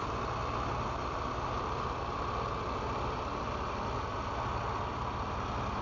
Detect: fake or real real